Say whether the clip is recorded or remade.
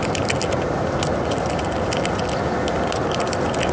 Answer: recorded